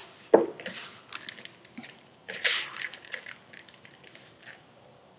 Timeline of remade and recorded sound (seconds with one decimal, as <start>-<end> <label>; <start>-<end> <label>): 0.0-1.7 recorded; 1.7-5.2 remade